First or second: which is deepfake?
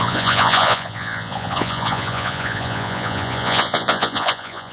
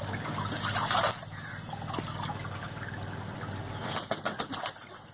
first